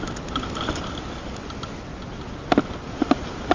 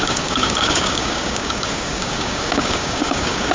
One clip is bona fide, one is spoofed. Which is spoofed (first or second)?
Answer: second